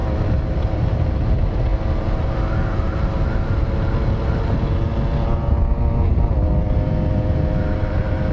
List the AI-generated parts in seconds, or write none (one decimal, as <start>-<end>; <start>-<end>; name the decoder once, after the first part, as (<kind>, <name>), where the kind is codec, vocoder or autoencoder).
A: none